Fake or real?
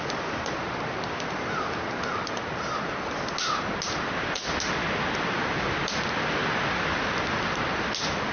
real